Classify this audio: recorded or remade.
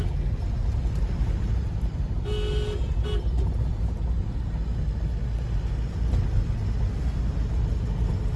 recorded